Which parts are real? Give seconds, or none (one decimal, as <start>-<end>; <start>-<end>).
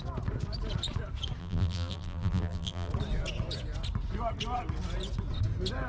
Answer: 0.0-1.4; 2.9-5.9